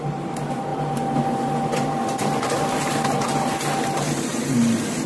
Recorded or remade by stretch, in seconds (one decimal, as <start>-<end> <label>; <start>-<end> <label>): 0.0-5.1 recorded